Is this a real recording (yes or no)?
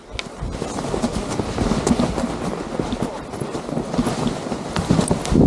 yes